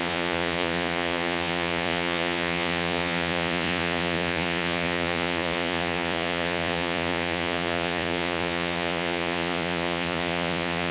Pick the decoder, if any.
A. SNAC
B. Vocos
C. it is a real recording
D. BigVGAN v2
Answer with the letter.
B